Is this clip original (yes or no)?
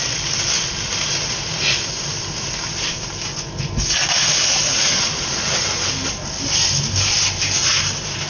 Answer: yes